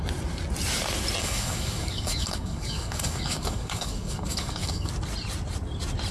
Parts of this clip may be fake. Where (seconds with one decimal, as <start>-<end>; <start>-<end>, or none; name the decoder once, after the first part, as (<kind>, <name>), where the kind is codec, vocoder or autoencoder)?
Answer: 1.2-4.9 (codec, DAC)